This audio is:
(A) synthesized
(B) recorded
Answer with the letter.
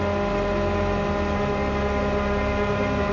B